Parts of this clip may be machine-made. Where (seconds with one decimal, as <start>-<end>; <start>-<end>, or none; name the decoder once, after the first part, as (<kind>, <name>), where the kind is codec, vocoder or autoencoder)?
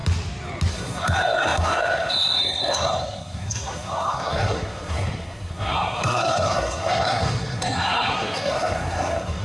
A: 0.7-9.4 (codec, SNAC)